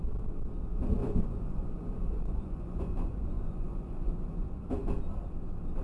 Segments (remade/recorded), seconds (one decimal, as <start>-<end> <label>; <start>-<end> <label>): 0.0-1.0 recorded; 1.0-4.5 remade; 4.5-5.8 recorded